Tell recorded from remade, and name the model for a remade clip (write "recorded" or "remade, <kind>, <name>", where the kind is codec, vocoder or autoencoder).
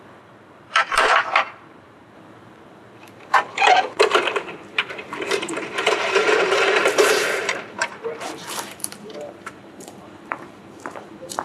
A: remade, vocoder, BigVGAN v2